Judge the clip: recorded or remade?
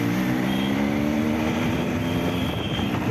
recorded